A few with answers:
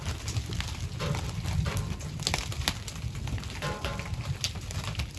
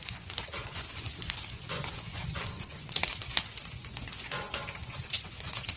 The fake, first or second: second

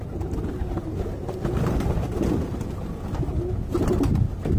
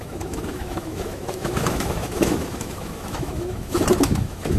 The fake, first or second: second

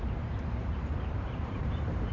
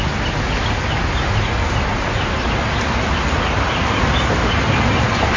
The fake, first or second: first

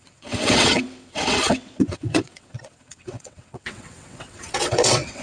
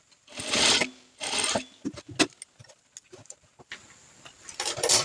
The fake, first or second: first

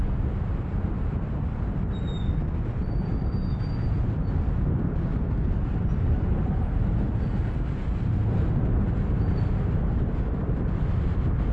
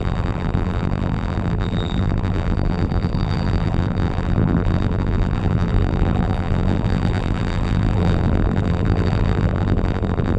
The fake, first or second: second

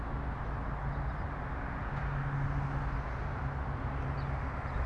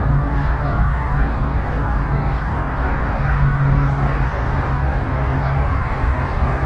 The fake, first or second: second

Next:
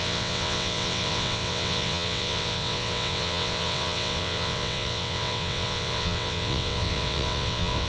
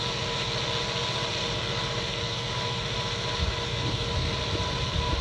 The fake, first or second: first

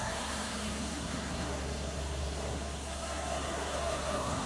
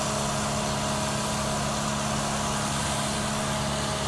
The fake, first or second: first